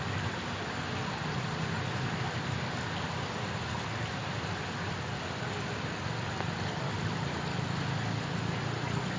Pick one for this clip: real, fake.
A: real